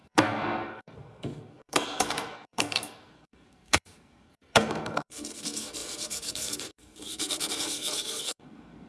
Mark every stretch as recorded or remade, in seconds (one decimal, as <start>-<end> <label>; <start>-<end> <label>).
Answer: 0.0-8.9 remade